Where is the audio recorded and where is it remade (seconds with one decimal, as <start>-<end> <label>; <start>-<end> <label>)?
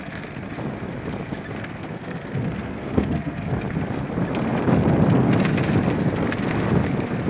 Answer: 0.0-1.6 recorded; 1.6-3.5 remade; 3.5-7.3 recorded